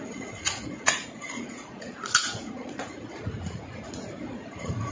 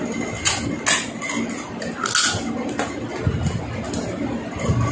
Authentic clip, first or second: second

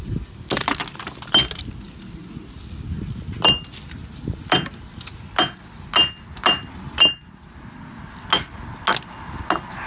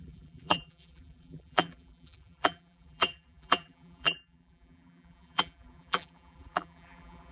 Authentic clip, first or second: first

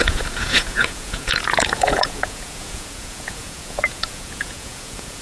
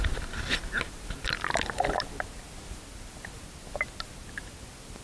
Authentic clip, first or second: second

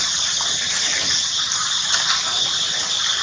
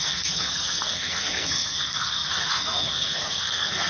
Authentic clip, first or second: first